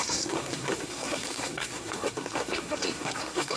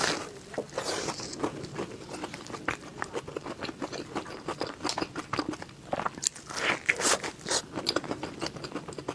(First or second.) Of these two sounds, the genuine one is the second